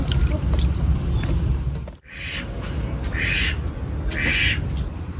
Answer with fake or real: real